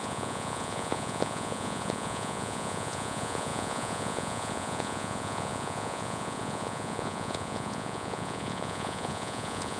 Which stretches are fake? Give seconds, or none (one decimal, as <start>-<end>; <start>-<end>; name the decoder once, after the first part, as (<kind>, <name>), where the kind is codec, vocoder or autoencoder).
0.0-9.8 (vocoder, Vocos)